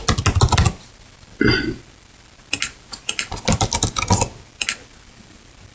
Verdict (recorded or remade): recorded